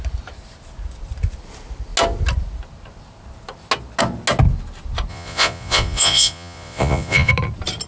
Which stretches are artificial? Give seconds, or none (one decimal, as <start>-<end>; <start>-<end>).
5.1-7.3